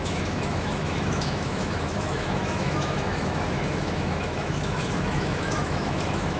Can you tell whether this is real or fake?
fake